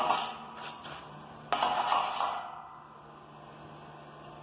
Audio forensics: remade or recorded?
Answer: recorded